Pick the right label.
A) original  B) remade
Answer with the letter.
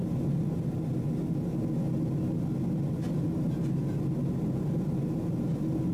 A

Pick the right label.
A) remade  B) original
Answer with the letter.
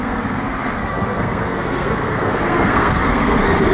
A